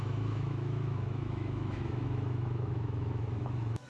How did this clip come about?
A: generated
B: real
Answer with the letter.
A